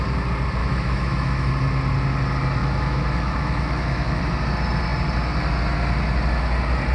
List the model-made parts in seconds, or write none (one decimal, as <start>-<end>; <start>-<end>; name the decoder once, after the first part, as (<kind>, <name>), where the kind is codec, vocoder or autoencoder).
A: 0.6-1.5 (autoencoder, DAC-VAE); 2.6-4.2